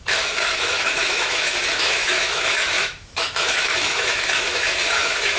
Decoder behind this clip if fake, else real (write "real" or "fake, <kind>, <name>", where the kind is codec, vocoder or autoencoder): fake, autoencoder, DAC-VAE